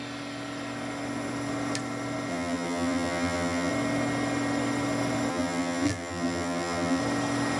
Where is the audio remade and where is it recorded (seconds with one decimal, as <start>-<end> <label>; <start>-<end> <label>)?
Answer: 0.0-2.3 recorded; 2.3-3.7 remade; 3.7-5.3 recorded; 5.3-7.0 remade; 7.0-7.6 recorded